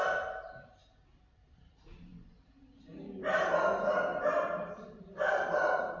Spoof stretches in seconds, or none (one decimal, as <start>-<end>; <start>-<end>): none